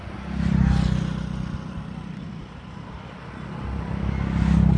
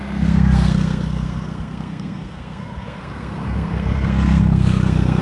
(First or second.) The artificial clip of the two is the second